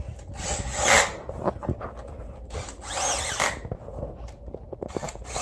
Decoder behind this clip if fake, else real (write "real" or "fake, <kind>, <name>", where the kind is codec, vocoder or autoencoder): real